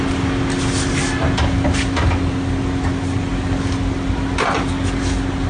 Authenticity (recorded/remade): recorded